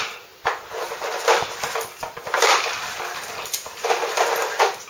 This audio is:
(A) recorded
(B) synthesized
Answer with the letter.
A